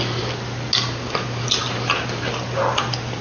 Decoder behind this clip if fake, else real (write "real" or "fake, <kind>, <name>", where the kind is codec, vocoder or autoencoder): real